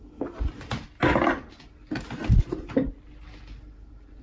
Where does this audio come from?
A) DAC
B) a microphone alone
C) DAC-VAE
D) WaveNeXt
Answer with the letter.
B